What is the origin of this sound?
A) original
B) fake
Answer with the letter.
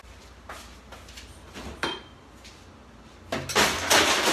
A